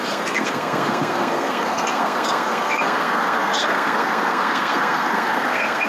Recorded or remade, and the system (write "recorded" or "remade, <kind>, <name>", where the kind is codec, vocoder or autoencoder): remade, codec, SNAC